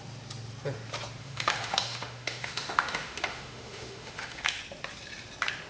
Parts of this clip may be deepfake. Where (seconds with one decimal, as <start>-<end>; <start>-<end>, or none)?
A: 1.2-4.6